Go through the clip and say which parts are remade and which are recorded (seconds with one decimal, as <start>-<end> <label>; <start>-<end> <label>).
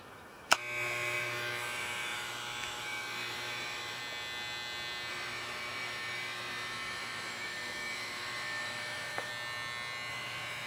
0.0-4.0 remade; 4.0-5.1 recorded; 5.1-9.3 remade; 9.3-10.1 recorded; 10.1-10.7 remade